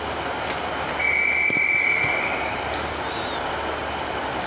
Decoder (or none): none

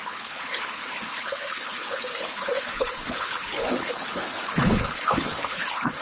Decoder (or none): codec, HILCodec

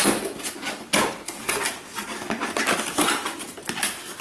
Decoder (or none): none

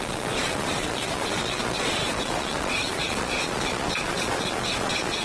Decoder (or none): vocoder, Vocos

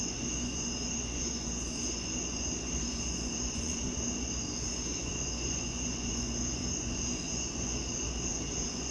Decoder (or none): vocoder, Vocos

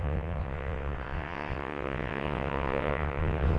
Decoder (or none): vocoder, WaveNeXt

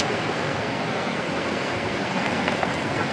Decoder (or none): codec, SNAC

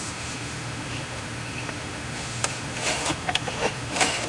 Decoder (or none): autoencoder, DAC-VAE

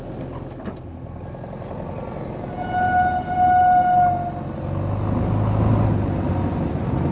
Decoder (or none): none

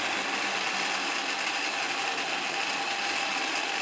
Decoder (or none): none